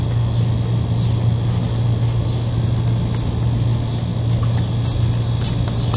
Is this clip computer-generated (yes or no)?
no